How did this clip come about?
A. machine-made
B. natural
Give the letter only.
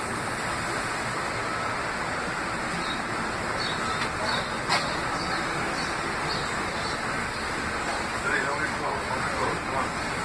B